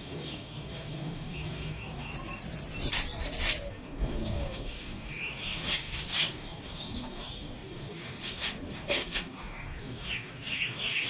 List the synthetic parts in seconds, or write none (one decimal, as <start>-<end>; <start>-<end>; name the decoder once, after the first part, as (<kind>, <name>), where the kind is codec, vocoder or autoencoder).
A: 0.0-2.1 (codec, DAC); 3.7-11.1